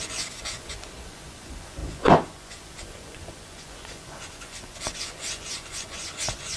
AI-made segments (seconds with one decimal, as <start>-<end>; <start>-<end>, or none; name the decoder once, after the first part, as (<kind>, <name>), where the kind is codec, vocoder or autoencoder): 0.0-6.6 (vocoder, Vocos)